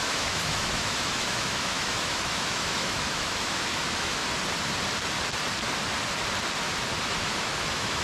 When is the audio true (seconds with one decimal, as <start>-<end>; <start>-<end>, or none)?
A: 4.2-7.0